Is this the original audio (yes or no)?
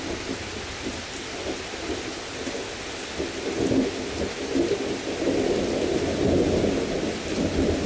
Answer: yes